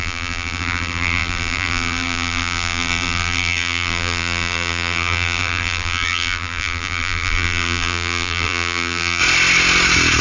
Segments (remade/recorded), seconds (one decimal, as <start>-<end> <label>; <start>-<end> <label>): 0.0-9.2 remade; 9.2-10.2 recorded